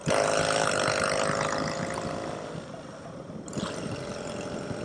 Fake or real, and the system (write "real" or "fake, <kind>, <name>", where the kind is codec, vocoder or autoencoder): real